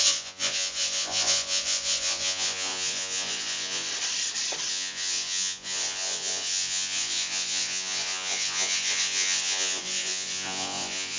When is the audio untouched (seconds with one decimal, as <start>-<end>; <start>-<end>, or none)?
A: 3.9-4.7